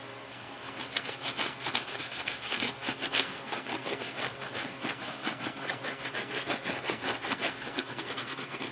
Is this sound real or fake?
fake